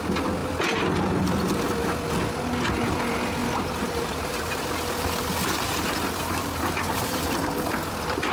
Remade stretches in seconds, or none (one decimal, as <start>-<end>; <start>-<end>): 3.4-4.9; 5.7-7.5